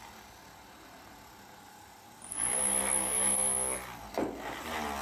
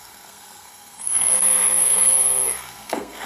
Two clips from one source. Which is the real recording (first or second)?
first